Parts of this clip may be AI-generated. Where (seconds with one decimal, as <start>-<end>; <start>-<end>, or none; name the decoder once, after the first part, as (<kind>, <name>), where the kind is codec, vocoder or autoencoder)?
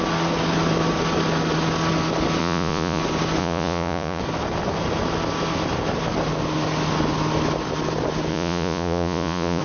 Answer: 2.4-3.0 (vocoder, Vocos); 3.4-4.2; 8.3-9.6